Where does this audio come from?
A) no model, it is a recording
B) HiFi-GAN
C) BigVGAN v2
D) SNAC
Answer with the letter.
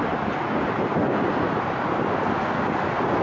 A